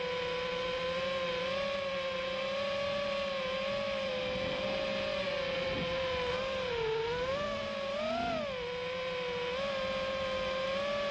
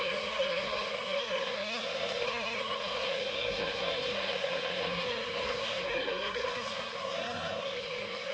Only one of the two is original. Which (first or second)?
first